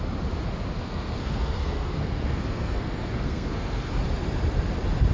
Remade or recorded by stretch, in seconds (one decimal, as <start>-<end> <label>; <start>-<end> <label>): 0.0-0.8 recorded; 0.8-3.9 remade; 3.9-5.1 recorded